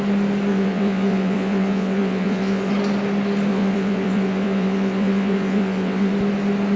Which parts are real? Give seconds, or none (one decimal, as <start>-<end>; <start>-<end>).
0.0-0.5; 2.7-3.5; 6.1-6.8